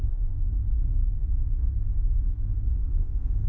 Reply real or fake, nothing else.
fake